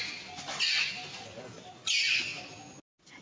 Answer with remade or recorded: recorded